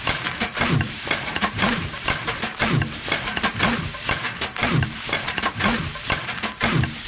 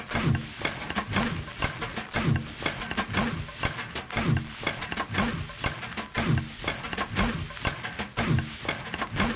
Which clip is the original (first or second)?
second